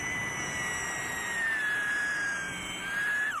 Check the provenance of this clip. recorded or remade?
recorded